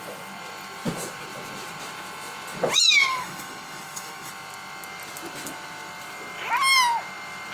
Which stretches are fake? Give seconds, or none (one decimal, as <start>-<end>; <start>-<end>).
3.1-4.3